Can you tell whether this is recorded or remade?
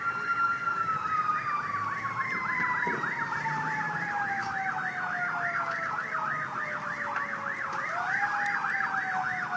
recorded